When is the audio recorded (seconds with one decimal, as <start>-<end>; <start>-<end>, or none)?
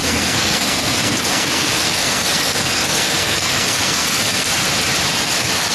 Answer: 4.6-5.2